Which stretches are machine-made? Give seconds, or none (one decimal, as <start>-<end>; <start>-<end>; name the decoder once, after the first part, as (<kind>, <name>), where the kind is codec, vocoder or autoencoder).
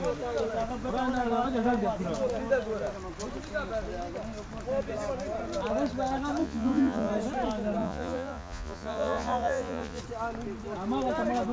6.4-7.1 (vocoder, Vocos); 7.8-10.0